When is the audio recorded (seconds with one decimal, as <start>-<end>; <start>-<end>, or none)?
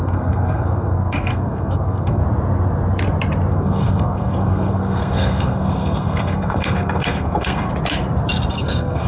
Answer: 2.2-3.5; 7.7-8.5